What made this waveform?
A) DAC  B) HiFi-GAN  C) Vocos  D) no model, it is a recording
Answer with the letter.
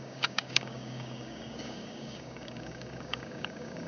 A